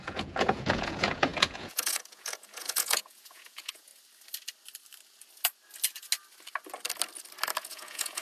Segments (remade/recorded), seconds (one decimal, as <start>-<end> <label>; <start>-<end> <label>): 0.0-3.9 remade; 3.9-7.6 recorded; 7.6-8.2 remade

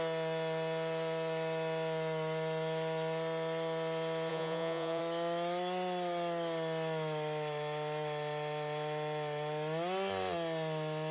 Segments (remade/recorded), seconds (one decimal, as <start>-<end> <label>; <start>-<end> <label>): 0.0-4.3 recorded; 4.3-5.0 remade; 5.0-11.1 recorded

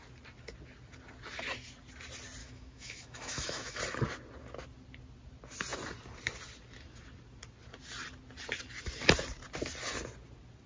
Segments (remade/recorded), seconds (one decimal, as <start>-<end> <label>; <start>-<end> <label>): 0.0-2.4 recorded; 2.4-3.8 remade; 3.8-10.7 recorded

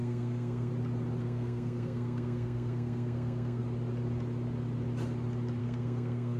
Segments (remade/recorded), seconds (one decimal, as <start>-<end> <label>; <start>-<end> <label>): 0.0-0.7 remade; 0.7-1.2 recorded; 1.2-3.6 remade; 3.6-5.6 recorded; 5.6-6.4 remade

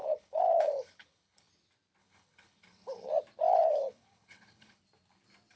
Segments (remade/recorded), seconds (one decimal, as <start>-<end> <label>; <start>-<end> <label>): 0.0-1.5 remade; 1.5-2.0 recorded; 2.0-3.1 remade; 3.1-3.5 recorded; 3.5-4.8 remade; 4.8-5.6 recorded

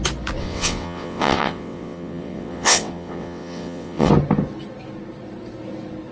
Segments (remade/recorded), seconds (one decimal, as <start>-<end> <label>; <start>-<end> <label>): 0.0-0.4 recorded; 0.4-4.1 remade; 4.1-6.1 recorded

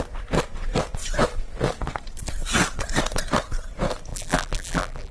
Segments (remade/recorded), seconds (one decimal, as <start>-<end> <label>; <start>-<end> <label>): 0.0-4.1 recorded; 4.1-5.1 remade